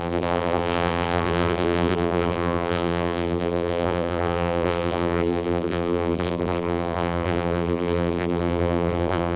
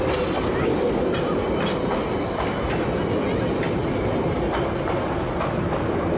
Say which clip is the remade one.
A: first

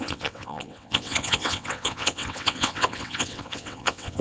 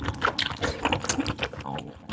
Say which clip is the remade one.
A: first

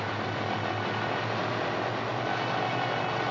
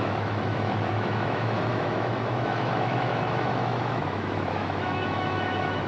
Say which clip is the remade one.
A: second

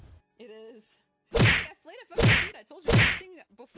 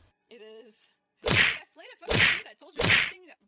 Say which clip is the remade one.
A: second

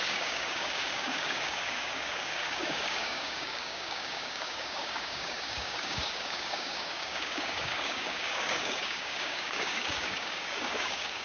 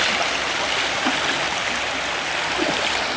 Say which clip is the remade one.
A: first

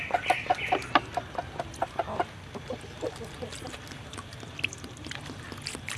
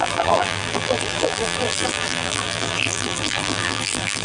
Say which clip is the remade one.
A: second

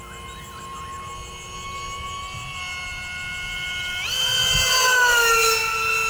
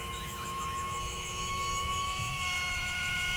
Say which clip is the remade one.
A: second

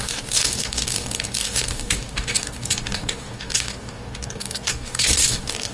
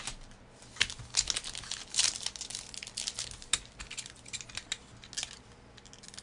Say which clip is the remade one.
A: first